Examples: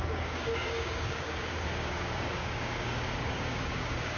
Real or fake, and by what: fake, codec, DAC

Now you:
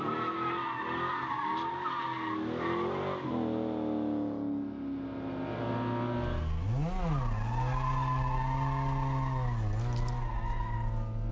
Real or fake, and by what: real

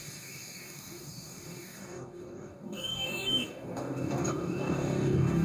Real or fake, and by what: fake, codec, DAC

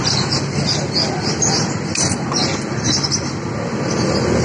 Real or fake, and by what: real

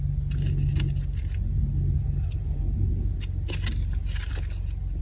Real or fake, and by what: real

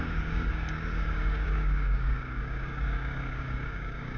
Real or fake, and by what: fake, codec, DAC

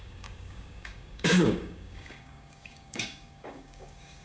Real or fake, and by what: fake, codec, DAC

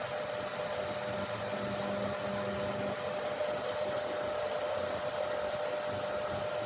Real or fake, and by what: real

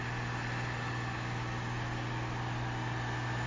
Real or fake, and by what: real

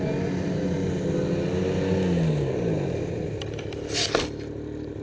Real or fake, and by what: real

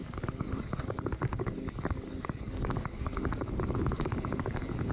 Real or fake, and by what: fake, codec, DAC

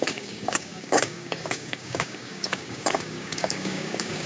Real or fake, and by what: fake, codec, DAC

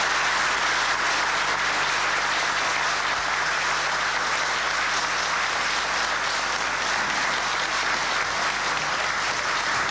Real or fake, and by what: real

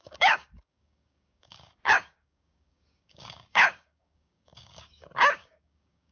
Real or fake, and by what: fake, codec, DAC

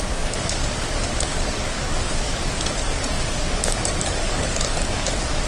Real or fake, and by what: fake, codec, DAC